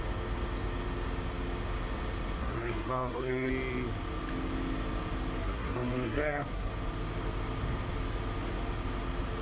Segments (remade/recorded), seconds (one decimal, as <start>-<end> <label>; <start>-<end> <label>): 0.0-2.4 recorded; 2.4-3.5 remade; 3.5-5.4 recorded; 5.4-6.7 remade; 6.7-9.4 recorded